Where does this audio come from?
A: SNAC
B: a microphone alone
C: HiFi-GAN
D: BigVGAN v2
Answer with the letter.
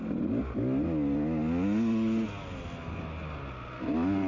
B